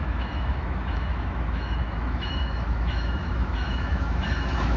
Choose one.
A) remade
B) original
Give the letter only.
A